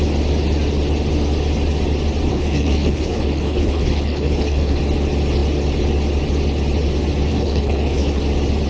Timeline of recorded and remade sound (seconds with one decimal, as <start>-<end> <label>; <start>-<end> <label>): 0.0-2.3 recorded; 2.3-4.8 remade; 4.8-7.3 recorded; 7.3-8.2 remade; 8.2-8.7 recorded